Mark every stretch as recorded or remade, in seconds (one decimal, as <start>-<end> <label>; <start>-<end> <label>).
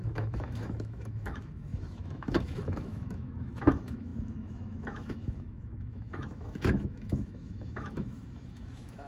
0.0-9.1 remade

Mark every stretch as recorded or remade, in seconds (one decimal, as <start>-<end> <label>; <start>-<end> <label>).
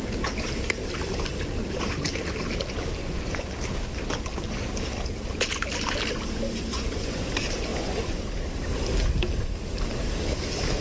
0.0-3.0 recorded; 3.0-3.5 remade; 3.5-6.7 recorded; 6.7-7.3 remade; 7.3-7.7 recorded; 7.7-8.2 remade; 8.2-10.8 recorded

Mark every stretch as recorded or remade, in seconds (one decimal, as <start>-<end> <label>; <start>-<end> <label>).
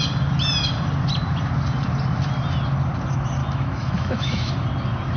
0.0-3.4 recorded; 3.4-4.5 remade; 4.5-5.2 recorded